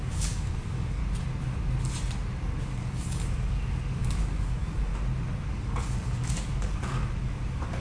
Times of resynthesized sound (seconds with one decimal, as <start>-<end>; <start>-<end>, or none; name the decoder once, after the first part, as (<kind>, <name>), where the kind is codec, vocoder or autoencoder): 0.0-1.0 (codec, DAC); 2.6-4.9; 5.5-7.8